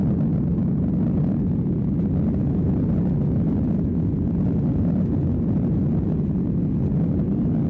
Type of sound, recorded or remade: recorded